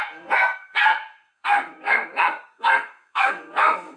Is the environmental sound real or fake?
fake